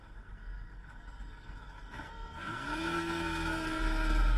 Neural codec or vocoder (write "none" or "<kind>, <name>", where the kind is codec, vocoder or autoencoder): codec, SNAC